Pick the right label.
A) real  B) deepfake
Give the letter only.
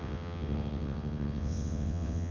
B